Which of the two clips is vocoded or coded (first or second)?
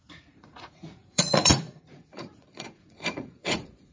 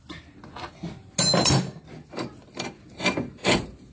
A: first